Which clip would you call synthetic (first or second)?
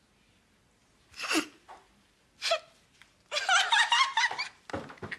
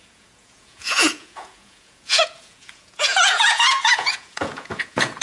second